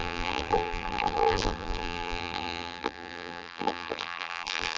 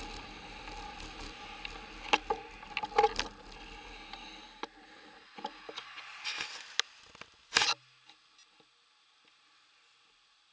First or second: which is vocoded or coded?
first